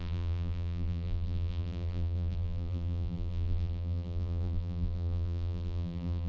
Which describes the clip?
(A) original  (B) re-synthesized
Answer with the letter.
B